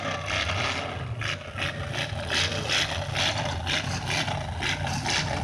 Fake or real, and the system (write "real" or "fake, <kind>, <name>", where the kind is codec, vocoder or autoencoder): real